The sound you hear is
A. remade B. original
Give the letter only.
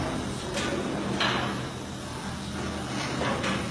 B